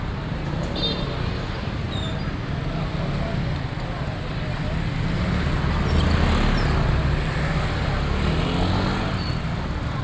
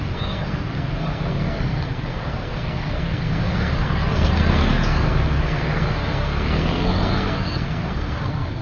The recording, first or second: first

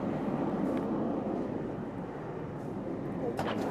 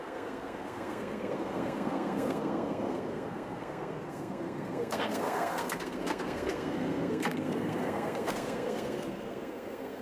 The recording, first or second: first